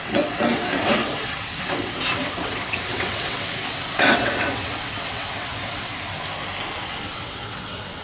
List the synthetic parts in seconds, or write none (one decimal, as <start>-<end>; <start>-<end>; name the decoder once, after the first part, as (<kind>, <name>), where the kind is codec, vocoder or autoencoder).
0.0-5.9 (vocoder, WaveNeXt); 6.8-8.0